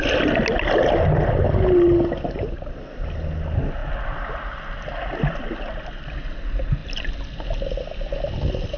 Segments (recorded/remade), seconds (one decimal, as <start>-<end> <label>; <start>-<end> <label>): 0.0-8.8 recorded